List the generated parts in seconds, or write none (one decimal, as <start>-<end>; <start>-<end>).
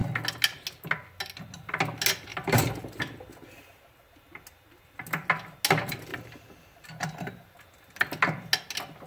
2.3-3.0; 6.1-8.0